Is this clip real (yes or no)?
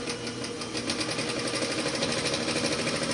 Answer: yes